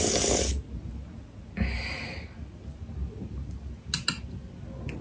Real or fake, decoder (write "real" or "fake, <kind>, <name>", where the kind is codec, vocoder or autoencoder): real